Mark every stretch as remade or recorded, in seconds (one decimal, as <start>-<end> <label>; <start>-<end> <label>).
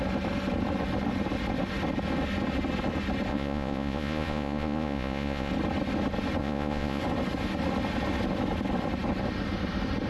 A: 0.0-3.3 recorded; 3.3-5.5 remade; 5.5-6.4 recorded; 6.4-7.0 remade; 7.0-10.1 recorded